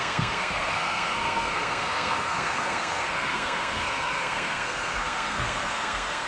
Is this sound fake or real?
fake